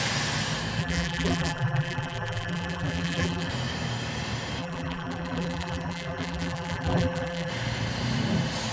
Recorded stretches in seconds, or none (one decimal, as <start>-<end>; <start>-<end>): 0.0-0.8; 3.5-4.6; 7.5-8.7